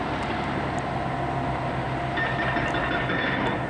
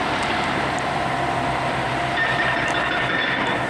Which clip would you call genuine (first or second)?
first